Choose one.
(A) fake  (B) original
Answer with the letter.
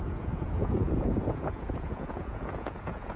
A